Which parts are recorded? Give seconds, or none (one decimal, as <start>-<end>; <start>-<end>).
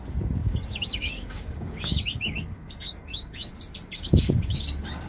0.0-0.4; 3.5-3.9; 4.6-5.1